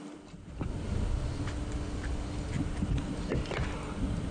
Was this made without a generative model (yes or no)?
yes